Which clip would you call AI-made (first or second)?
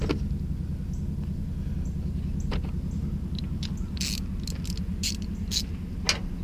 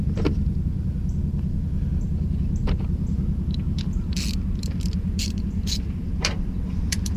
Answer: second